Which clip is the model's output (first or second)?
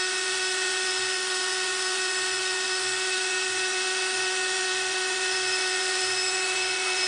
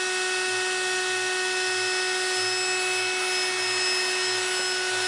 first